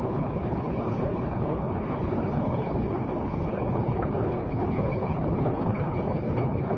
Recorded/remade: remade